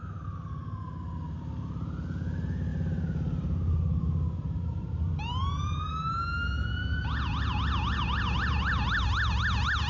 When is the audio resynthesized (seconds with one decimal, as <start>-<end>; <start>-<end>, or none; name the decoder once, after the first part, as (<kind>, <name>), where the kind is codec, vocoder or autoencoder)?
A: 2.7-5.9 (vocoder, BigVGAN v2)